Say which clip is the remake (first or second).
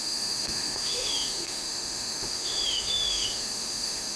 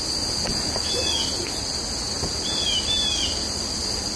first